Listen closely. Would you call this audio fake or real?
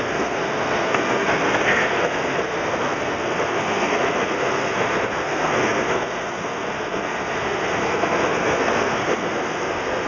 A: fake